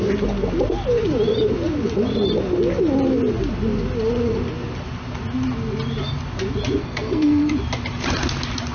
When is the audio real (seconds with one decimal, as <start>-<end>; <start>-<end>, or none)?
0.0-6.8; 7.5-8.7